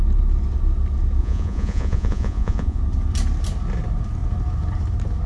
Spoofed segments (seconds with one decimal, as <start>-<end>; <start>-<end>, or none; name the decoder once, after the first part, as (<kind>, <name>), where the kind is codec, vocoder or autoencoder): 1.2-2.8 (vocoder, Vocos)